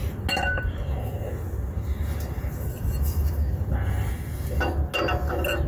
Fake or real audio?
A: real